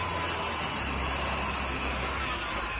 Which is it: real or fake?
real